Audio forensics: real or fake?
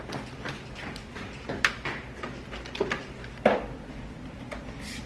real